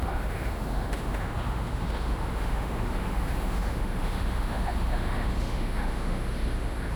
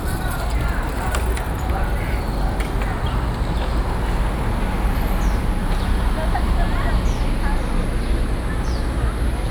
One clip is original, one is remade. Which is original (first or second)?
second